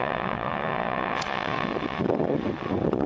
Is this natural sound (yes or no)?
no